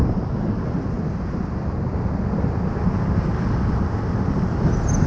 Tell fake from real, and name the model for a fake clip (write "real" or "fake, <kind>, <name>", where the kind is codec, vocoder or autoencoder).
real